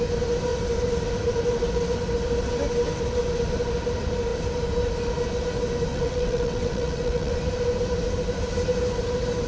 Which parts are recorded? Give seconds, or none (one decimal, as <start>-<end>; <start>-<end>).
0.0-5.9; 7.3-9.5